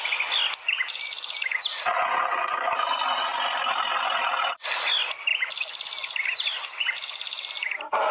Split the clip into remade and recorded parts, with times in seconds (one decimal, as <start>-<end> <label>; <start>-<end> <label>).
0.0-8.1 recorded